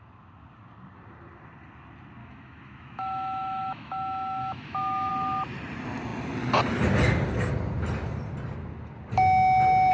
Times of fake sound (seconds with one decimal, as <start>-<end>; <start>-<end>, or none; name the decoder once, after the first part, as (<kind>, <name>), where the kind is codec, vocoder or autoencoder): 2.2-5.1 (autoencoder, DAC-VAE)